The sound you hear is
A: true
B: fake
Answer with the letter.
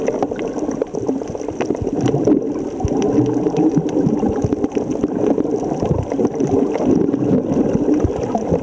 A